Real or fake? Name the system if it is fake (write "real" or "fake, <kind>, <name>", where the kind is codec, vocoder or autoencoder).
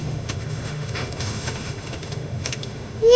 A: fake, autoencoder, DAC-VAE